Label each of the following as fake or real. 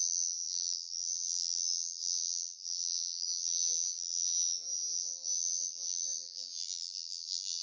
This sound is fake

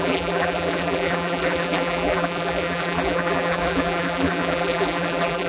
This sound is fake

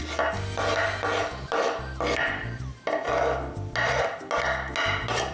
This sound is real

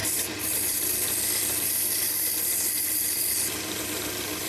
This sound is fake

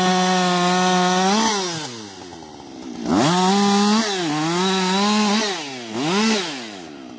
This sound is real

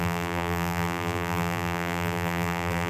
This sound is fake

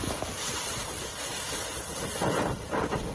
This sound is fake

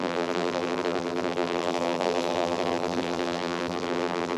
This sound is fake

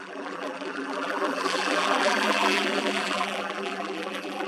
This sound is fake